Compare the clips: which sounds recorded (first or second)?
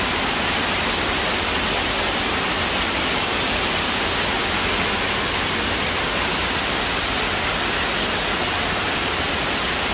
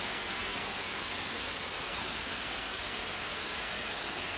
first